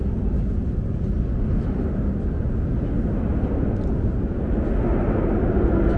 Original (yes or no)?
yes